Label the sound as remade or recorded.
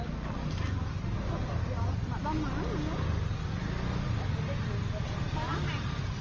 recorded